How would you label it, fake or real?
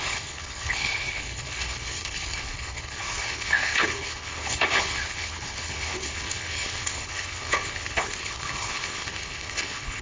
fake